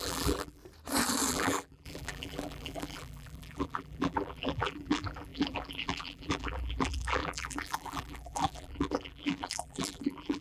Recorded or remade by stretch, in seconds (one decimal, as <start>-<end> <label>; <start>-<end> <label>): 0.0-0.6 remade; 0.6-1.3 recorded; 1.3-10.4 remade